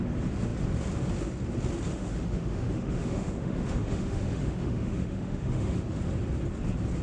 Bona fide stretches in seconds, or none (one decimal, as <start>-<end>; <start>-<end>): 0.0-1.9; 6.0-7.0